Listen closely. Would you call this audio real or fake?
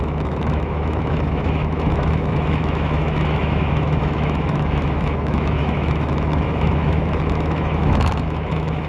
fake